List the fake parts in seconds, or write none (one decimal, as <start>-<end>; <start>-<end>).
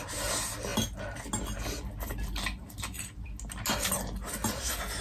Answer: none